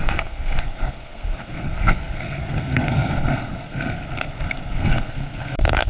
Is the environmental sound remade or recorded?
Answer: remade